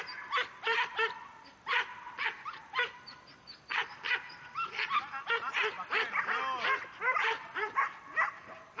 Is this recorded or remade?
recorded